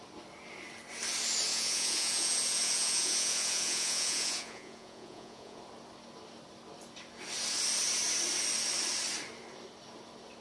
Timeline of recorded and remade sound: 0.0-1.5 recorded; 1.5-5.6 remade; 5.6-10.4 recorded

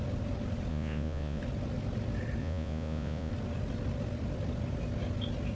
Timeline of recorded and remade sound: 0.0-0.7 recorded; 0.7-1.4 remade; 1.4-2.4 recorded; 2.4-3.3 remade; 3.3-5.5 recorded

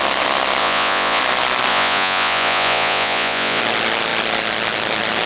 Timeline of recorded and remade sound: 0.0-0.6 recorded; 0.6-1.2 remade; 1.2-1.7 recorded; 1.7-3.6 remade; 3.6-5.3 recorded

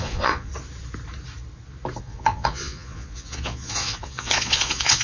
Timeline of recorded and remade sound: 0.0-0.5 remade; 0.5-2.0 recorded; 2.0-5.0 remade

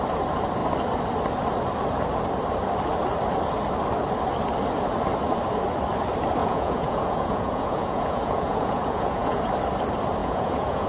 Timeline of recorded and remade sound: 0.0-6.4 recorded; 6.4-9.4 remade; 9.4-10.2 recorded; 10.2-10.9 remade

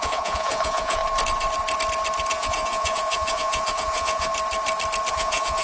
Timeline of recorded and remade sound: 0.0-1.0 remade; 1.0-2.3 recorded; 2.3-4.3 remade; 4.3-5.1 recorded; 5.1-5.6 remade

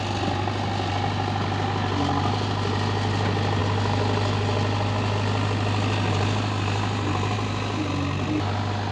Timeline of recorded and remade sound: 0.0-8.9 recorded